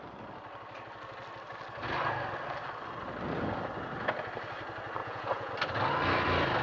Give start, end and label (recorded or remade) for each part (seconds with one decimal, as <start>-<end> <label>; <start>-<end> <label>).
0.0-5.0 recorded; 5.0-5.5 remade; 5.5-6.6 recorded